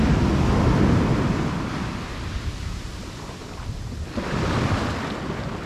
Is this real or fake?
real